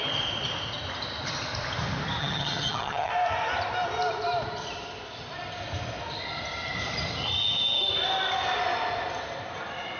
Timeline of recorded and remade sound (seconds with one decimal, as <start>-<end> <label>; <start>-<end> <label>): 0.0-2.2 recorded; 2.2-3.1 remade; 3.1-10.0 recorded